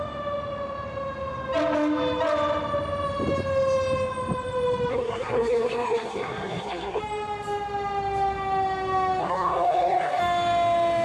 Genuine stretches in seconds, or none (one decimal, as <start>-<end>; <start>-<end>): 0.0-4.9; 7.0-9.2; 10.2-11.0